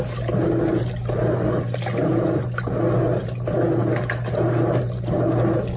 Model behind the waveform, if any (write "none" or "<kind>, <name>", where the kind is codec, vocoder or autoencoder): none